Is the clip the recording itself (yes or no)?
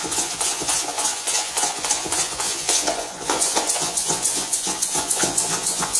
no